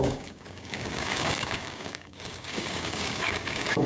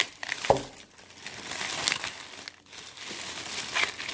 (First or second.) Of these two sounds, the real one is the second